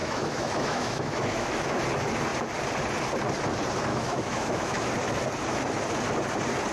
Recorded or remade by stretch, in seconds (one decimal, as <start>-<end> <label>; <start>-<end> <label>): 0.0-1.8 remade; 1.8-3.9 recorded; 3.9-4.9 remade; 4.9-6.7 recorded